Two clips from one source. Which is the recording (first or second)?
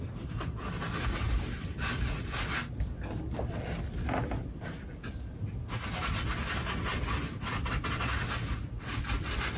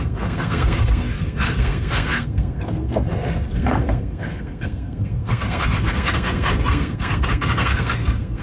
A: first